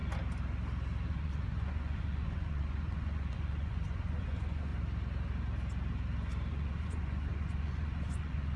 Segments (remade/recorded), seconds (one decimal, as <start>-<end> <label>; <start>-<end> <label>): 0.0-1.1 recorded; 1.1-4.7 remade; 4.7-6.5 recorded; 6.5-8.6 remade